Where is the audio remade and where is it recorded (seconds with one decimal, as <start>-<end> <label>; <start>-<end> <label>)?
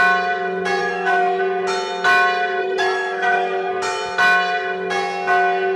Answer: 0.0-0.8 recorded; 0.8-1.4 remade; 1.4-2.6 recorded; 2.6-3.7 remade; 3.7-5.8 recorded